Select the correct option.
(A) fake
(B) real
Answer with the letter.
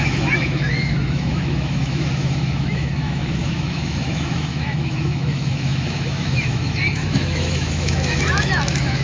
A